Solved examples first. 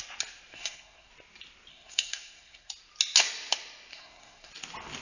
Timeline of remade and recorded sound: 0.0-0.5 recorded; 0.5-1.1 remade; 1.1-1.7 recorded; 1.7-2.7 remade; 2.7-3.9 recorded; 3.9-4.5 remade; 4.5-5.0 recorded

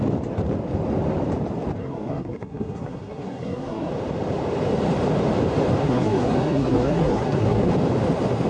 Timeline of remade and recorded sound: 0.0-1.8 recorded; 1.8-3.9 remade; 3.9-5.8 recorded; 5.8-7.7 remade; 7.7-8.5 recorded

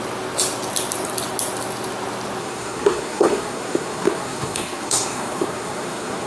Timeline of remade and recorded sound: 0.0-2.4 recorded; 2.4-6.3 remade